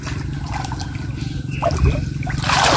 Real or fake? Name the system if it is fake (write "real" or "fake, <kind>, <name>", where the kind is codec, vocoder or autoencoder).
real